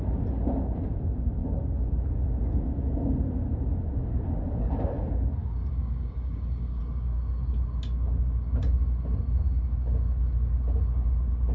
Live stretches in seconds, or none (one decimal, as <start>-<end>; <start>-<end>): 0.0-5.4; 6.8-11.5

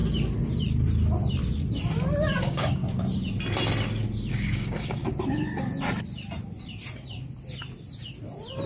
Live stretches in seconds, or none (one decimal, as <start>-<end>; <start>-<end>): 0.0-2.4; 2.8-4.3; 5.0-8.7

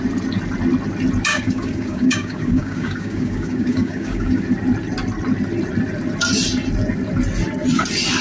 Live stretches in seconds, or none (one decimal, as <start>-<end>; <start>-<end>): 0.0-1.3; 4.4-8.2

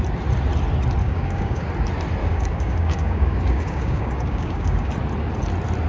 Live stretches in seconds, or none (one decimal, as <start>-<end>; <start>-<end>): 0.0-1.0; 1.7-2.2; 4.9-5.9

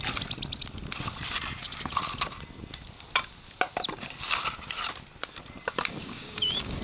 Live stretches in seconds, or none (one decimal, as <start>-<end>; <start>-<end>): 0.0-6.0

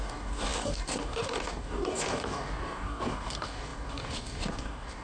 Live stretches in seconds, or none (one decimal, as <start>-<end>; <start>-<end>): none